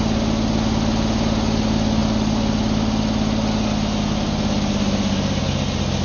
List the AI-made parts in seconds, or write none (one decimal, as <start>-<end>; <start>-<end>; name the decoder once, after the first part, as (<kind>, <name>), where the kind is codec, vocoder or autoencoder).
none